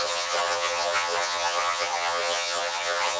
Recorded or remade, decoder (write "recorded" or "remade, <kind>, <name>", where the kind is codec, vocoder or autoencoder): remade, vocoder, HiFi-GAN